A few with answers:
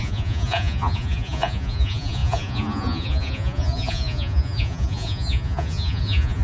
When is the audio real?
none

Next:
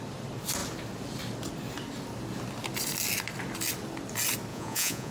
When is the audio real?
0.0-4.5

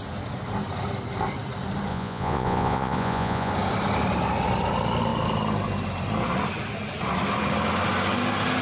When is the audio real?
0.0-1.9; 3.5-8.6

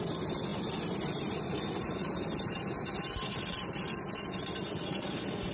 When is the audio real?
0.0-5.5

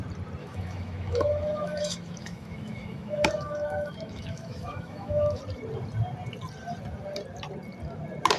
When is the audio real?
0.0-0.4; 5.4-8.4

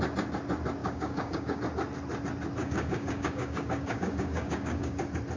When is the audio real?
0.0-0.8; 1.6-2.6; 5.0-5.4

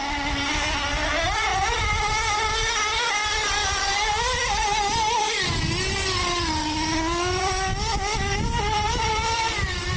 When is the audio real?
0.0-10.0

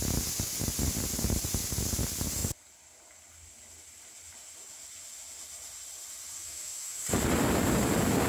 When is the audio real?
0.0-6.4; 7.0-8.3